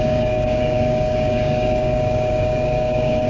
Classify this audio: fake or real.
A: fake